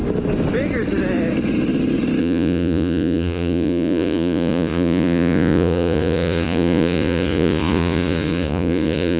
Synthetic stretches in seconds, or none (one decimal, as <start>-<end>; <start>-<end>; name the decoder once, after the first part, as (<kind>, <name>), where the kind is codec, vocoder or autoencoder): 2.2-9.2 (vocoder, Vocos)